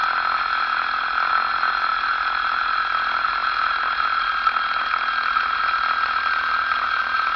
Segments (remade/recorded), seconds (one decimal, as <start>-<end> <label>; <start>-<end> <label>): 0.0-7.4 recorded

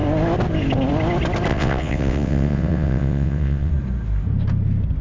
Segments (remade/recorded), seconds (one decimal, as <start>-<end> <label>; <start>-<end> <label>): 0.0-1.5 recorded; 1.5-3.7 remade; 3.7-5.0 recorded

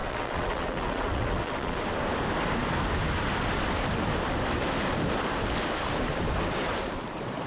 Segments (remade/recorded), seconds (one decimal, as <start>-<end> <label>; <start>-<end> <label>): 0.0-1.8 remade; 1.8-7.5 recorded

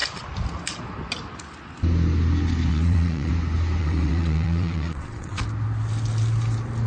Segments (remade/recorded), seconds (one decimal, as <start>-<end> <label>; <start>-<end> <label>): 0.0-2.7 recorded; 2.7-3.3 remade; 3.3-3.8 recorded; 3.8-5.4 remade; 5.4-6.9 recorded

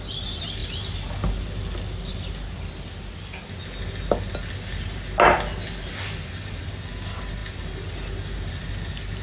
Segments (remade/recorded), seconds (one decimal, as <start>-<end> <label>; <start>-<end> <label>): 0.0-9.2 recorded

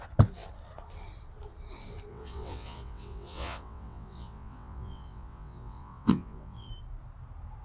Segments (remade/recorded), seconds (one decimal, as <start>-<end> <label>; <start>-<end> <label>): 0.0-2.1 recorded; 2.1-6.7 remade; 6.7-7.6 recorded